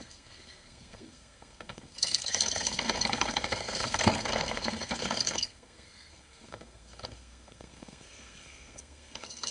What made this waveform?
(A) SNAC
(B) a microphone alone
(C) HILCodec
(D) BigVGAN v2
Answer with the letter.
A